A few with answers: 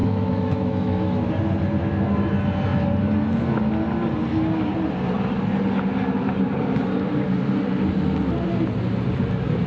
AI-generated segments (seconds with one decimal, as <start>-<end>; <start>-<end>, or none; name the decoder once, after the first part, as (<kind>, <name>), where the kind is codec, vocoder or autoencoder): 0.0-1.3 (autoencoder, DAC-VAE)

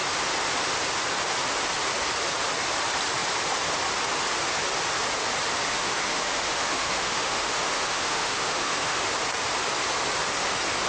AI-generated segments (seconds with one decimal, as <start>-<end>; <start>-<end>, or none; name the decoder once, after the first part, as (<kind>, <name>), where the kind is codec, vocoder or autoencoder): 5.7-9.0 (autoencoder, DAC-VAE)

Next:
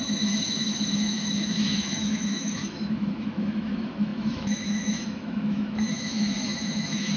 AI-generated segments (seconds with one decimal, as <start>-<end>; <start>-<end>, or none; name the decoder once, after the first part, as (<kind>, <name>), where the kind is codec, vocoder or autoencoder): 0.0-7.2 (autoencoder, DAC-VAE)

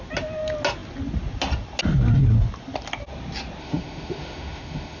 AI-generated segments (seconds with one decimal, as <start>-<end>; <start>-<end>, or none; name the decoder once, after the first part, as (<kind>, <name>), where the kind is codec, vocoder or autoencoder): 3.6-5.0 (autoencoder, DAC-VAE)